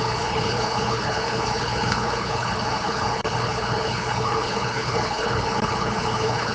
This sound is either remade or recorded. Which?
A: remade